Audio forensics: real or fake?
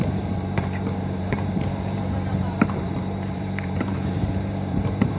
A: fake